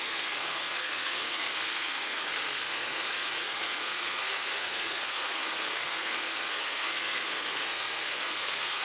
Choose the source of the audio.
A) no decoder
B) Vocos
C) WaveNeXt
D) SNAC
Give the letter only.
D